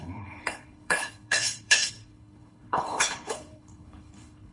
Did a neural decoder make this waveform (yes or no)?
yes